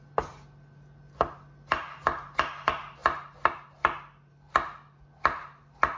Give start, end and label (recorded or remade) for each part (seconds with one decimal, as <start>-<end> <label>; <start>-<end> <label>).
0.0-6.0 recorded